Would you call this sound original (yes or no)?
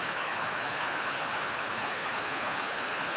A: no